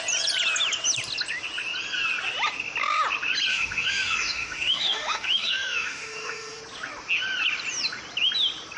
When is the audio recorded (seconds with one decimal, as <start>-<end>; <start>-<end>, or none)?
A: 0.0-3.5; 6.6-8.8